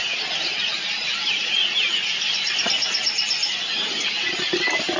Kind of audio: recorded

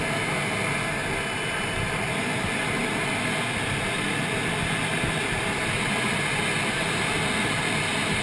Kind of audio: recorded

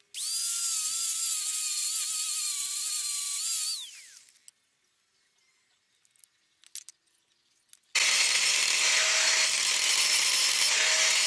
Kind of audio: recorded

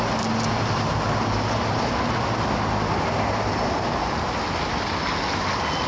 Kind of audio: recorded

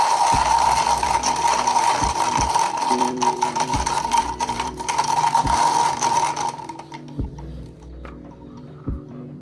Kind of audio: remade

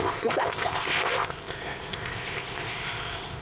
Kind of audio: remade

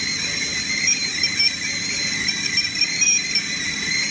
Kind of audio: recorded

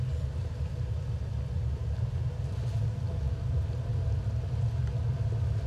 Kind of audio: recorded